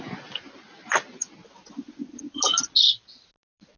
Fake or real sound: real